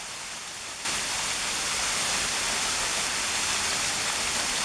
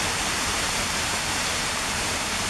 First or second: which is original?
first